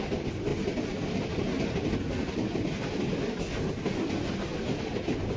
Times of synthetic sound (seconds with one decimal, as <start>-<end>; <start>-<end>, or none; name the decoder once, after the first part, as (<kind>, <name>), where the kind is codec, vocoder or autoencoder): none